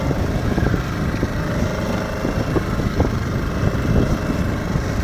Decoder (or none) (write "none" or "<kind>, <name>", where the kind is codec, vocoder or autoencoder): none